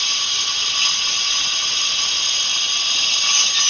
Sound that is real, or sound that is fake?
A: real